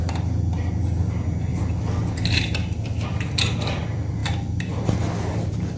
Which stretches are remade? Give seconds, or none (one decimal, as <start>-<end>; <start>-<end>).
none